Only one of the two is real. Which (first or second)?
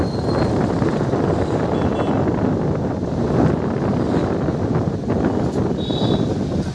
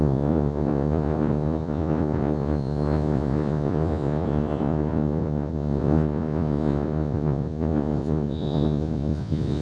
first